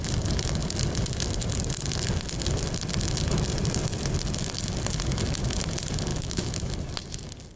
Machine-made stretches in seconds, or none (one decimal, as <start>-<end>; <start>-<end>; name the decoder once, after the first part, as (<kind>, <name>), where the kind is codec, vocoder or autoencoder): 6.1-6.7 (autoencoder, DAC-VAE)